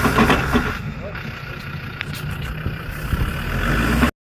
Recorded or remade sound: recorded